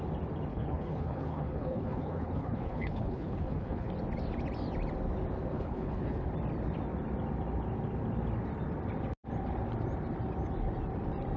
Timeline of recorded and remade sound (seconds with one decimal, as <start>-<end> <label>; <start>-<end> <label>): 0.0-0.5 recorded; 0.5-3.9 remade; 3.9-5.5 recorded; 5.5-6.2 remade; 6.2-11.4 recorded